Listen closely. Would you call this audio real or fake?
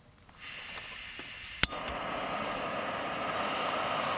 real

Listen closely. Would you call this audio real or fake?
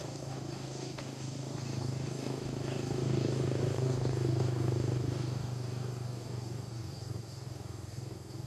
fake